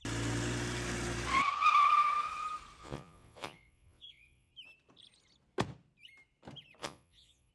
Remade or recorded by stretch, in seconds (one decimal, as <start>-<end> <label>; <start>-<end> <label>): 0.0-2.8 recorded; 2.8-4.5 remade; 4.5-6.8 recorded; 6.8-7.5 remade